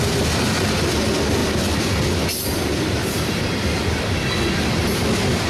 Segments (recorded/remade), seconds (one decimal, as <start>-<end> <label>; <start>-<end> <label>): 0.0-5.5 recorded